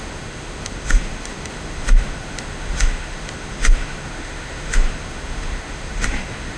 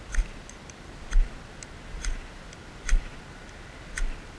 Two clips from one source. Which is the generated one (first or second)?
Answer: first